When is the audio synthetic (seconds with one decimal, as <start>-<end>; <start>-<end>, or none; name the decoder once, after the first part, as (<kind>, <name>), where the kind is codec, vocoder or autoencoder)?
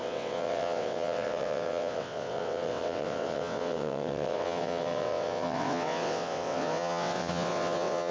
0.0-8.1 (vocoder, WaveNeXt)